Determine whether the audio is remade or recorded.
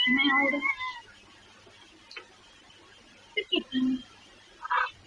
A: recorded